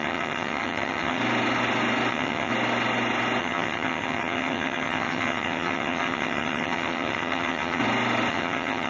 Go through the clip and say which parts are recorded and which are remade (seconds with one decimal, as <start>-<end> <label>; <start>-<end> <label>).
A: 0.0-1.2 remade; 1.2-2.1 recorded; 2.1-2.5 remade; 2.5-3.4 recorded; 3.4-7.8 remade; 7.8-8.3 recorded; 8.3-8.9 remade